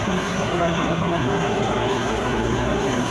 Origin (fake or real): fake